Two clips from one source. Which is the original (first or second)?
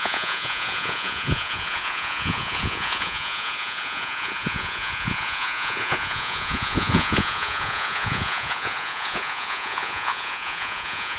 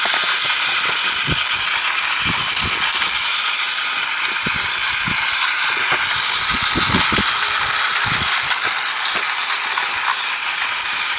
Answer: second